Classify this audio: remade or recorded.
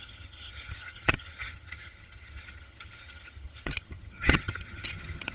remade